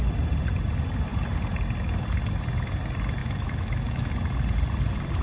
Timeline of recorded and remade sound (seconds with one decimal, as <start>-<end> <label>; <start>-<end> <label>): 0.0-3.2 recorded; 3.2-4.1 remade; 4.1-5.2 recorded